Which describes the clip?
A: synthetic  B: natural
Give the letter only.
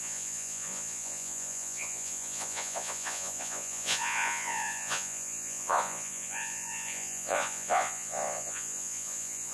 A